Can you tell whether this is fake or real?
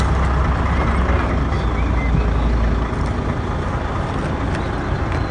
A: real